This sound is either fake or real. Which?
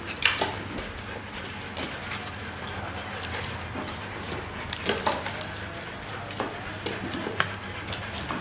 real